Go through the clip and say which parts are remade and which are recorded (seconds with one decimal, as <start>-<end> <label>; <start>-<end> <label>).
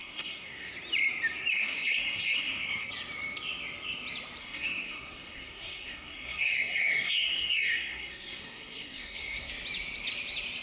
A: 0.0-0.7 remade; 0.7-1.5 recorded; 1.5-2.9 remade; 2.9-4.4 recorded; 4.4-9.5 remade; 9.5-10.6 recorded